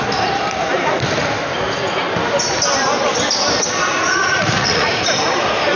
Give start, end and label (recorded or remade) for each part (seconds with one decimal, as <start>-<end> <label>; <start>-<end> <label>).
0.0-3.9 recorded; 3.9-5.1 remade; 5.1-5.8 recorded